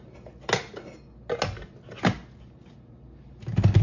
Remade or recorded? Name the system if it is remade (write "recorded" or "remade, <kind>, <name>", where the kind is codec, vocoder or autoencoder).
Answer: recorded